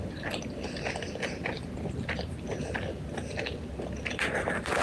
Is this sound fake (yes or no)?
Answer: no